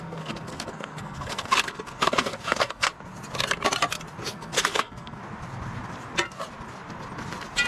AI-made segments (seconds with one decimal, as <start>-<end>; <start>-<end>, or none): 0.0-2.9; 4.3-5.2